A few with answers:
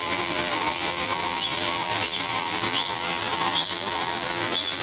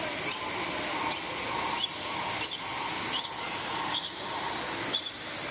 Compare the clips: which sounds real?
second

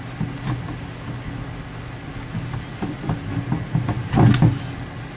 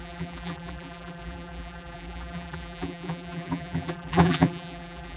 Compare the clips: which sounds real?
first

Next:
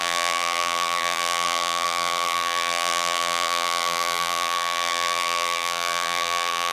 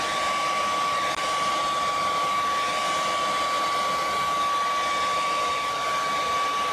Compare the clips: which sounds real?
second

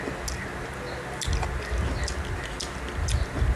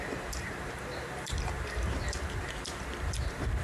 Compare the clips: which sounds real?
first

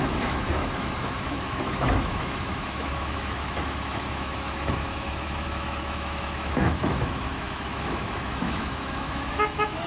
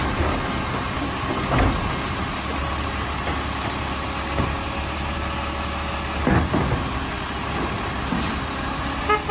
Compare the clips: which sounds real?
second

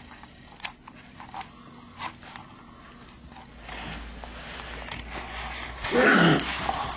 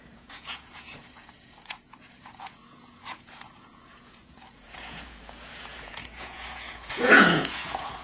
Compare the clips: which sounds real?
first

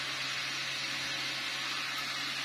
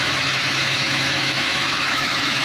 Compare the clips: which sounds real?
first